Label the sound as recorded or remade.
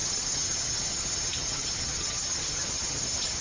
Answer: remade